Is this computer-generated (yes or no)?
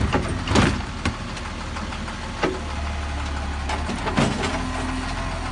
no